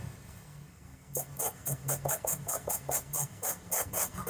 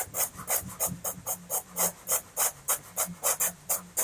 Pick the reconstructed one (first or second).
first